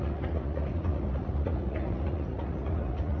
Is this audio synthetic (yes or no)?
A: yes